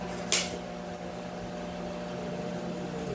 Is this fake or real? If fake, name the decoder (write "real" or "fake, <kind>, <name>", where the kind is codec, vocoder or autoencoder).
real